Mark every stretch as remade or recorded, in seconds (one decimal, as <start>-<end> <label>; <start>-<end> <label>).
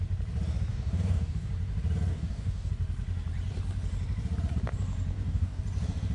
0.0-0.7 recorded; 0.7-1.5 remade; 1.5-2.1 recorded; 2.1-2.7 remade; 2.7-5.1 recorded; 5.1-5.6 remade; 5.6-6.1 recorded